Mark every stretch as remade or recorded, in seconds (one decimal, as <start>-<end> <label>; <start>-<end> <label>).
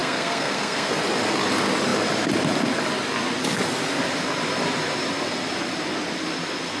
0.0-1.0 remade; 1.0-6.8 recorded